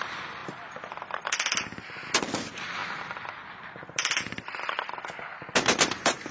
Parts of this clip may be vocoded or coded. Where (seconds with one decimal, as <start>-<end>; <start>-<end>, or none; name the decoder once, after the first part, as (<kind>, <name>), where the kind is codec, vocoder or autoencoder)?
none